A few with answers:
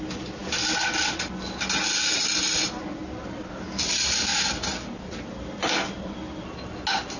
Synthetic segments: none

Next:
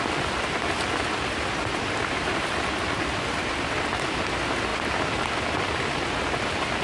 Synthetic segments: none

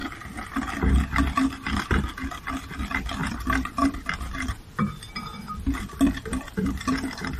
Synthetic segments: 3.2-4.5; 5.4-7.4

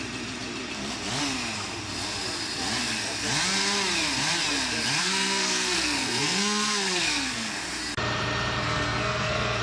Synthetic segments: 5.0-7.5; 8.6-9.6

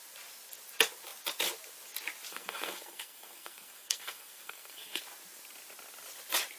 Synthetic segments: 2.3-5.0

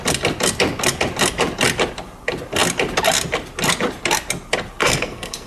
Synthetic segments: 4.8-5.5